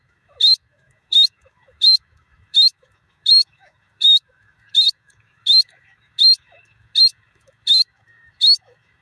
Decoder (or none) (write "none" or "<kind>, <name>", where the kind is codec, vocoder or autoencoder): autoencoder, DAC-VAE